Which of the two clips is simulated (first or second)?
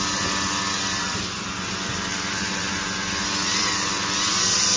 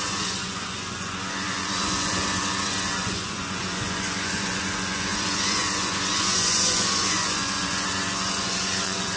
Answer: second